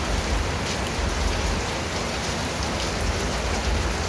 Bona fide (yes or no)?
yes